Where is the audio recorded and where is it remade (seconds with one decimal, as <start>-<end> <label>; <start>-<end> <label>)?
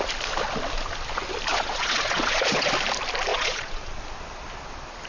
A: 0.0-1.5 recorded; 1.5-2.7 remade; 2.7-3.3 recorded; 3.3-4.0 remade; 4.0-5.1 recorded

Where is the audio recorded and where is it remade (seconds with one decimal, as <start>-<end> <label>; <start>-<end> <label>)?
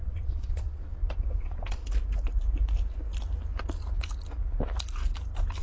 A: 0.0-0.9 remade; 0.9-1.4 recorded; 1.4-1.8 remade; 1.8-5.6 recorded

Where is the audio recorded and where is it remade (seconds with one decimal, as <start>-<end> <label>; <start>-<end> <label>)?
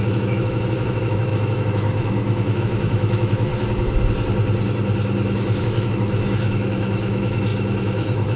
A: 0.0-3.5 remade; 3.5-5.6 recorded; 5.6-8.4 remade